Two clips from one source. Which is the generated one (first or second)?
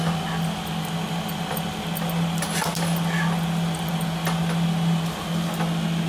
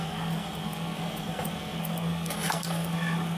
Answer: second